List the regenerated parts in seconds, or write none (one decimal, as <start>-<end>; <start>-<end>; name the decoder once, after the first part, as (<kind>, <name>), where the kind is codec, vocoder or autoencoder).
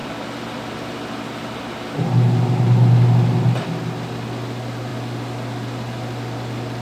none